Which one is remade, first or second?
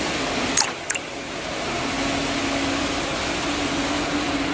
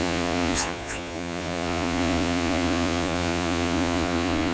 second